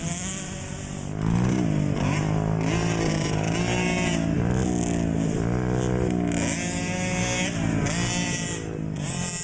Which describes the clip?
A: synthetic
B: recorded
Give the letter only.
B